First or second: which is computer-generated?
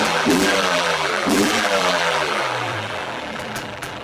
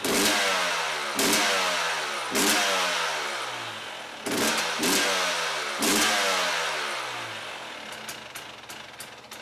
first